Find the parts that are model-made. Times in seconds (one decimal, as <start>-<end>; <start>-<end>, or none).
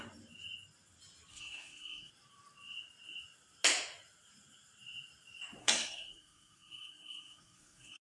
1.3-2.1; 5.6-8.1